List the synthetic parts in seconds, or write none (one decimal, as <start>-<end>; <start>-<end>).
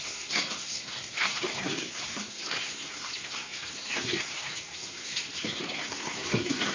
0.0-6.7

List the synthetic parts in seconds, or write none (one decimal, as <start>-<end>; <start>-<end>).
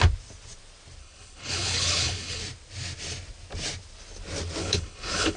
1.0-2.4; 4.6-5.4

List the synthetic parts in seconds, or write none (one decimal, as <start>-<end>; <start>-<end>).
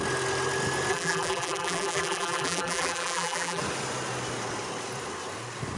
0.9-3.6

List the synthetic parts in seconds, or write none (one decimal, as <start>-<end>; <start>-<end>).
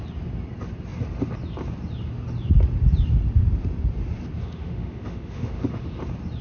4.4-6.0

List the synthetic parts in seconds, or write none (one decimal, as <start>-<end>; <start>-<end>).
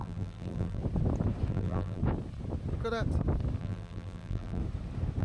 0.0-0.8; 1.5-2.0; 3.6-4.6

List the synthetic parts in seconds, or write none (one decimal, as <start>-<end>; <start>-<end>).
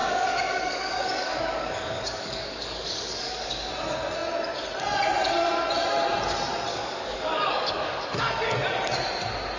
0.0-3.7; 6.7-8.2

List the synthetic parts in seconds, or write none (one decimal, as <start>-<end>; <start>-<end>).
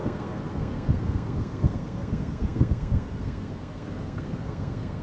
0.0-5.0